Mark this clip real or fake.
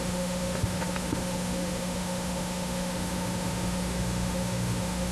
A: fake